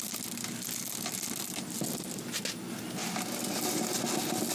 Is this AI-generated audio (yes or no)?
no